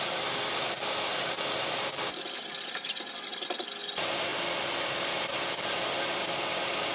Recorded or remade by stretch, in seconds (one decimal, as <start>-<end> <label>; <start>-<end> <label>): 0.0-6.9 recorded